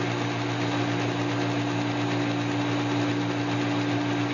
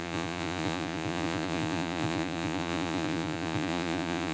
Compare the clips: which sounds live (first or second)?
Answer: first